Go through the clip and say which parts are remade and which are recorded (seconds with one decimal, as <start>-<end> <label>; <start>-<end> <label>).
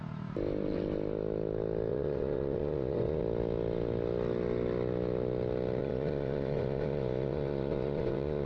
0.0-1.9 recorded; 1.9-3.2 remade; 3.2-5.8 recorded; 5.8-8.5 remade